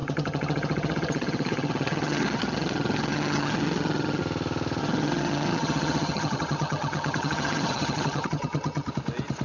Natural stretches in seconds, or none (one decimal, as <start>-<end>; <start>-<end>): 4.2-4.8; 8.9-9.4